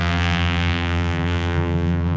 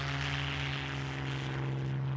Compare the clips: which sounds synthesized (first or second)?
first